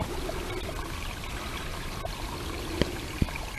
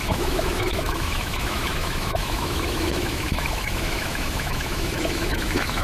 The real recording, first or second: first